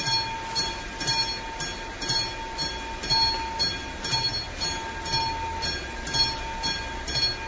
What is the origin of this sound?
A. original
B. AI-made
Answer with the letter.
A